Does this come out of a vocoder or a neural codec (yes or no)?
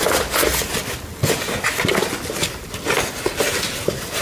no